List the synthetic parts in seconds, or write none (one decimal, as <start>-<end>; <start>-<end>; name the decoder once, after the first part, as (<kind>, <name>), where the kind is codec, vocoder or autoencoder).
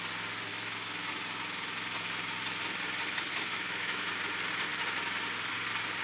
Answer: 0.5-1.1 (autoencoder, DAC-VAE); 3.3-4.1